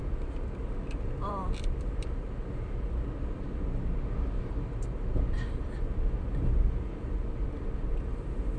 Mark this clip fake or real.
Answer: fake